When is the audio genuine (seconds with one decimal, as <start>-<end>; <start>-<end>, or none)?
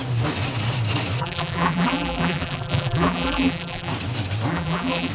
0.0-1.2; 3.9-4.5